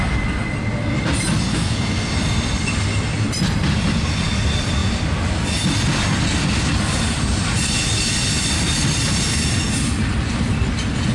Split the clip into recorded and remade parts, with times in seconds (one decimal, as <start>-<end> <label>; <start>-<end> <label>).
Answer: 0.0-1.5 recorded; 1.5-2.1 remade; 2.1-11.1 recorded